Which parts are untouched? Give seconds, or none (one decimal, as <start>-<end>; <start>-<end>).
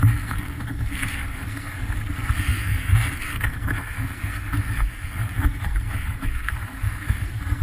none